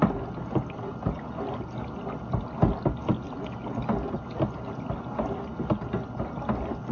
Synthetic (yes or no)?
no